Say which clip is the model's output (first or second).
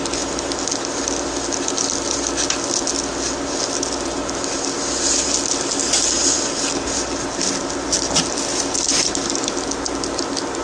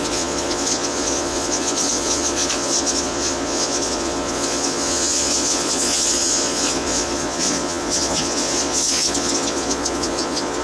second